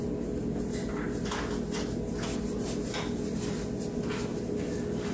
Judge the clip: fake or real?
real